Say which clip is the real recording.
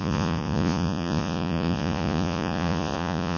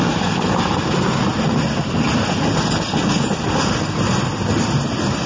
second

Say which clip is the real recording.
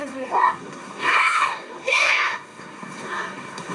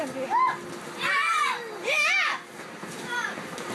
second